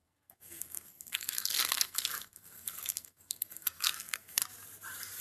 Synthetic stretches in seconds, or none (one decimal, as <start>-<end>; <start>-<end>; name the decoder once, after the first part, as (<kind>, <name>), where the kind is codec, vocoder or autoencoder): 0.0-4.4 (codec, SNAC)